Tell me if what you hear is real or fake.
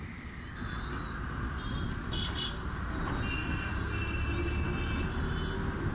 real